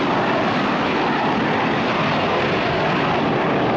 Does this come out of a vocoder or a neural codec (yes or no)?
no